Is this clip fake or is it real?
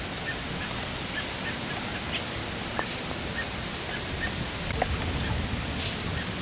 real